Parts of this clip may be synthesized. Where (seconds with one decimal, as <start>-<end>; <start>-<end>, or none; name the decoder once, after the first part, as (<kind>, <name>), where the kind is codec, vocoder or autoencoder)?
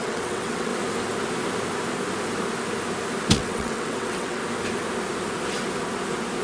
0.0-0.7 (vocoder, WaveNeXt); 3.3-4.4